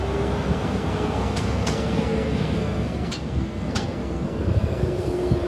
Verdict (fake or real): fake